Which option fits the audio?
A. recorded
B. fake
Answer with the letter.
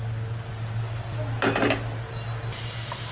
A